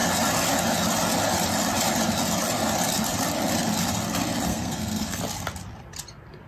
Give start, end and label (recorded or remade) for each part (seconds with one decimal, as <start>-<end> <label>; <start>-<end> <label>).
0.0-4.5 recorded; 4.5-5.2 remade; 5.2-6.5 recorded